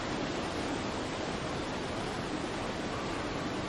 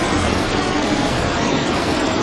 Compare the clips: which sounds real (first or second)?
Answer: first